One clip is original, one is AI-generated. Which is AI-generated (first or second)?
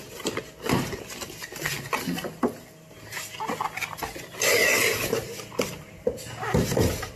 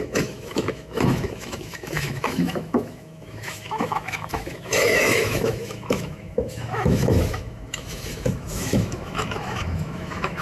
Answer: second